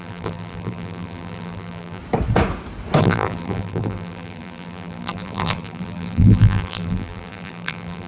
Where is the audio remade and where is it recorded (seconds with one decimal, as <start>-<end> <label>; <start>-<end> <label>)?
0.0-2.0 remade; 2.0-3.0 recorded; 3.0-8.1 remade